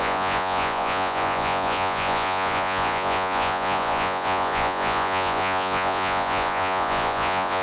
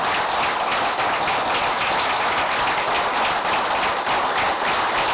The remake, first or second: first